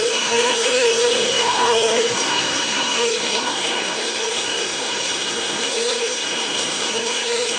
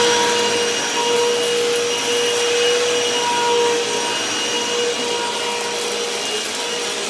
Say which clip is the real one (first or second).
second